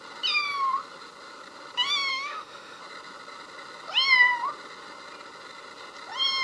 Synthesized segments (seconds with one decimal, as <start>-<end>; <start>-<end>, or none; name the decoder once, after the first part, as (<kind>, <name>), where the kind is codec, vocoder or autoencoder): 2.1-2.8 (autoencoder, DAC-VAE)